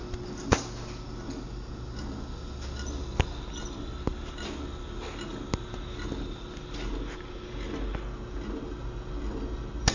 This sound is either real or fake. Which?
real